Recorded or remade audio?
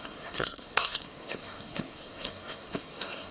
remade